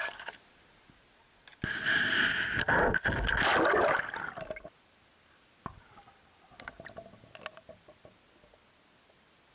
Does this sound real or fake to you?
real